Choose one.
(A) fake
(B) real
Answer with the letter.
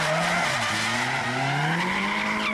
B